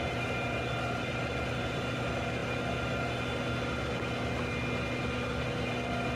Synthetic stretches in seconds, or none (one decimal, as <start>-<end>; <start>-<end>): none